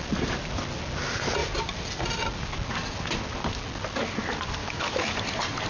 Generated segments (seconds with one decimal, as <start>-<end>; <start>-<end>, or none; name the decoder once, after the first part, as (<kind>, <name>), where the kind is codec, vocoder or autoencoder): 4.6-5.1 (autoencoder, DAC-VAE)